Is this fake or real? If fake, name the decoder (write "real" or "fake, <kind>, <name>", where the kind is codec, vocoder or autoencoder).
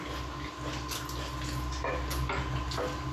real